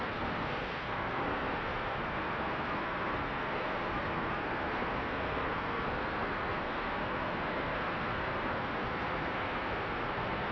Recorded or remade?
remade